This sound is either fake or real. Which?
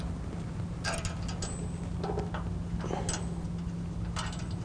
real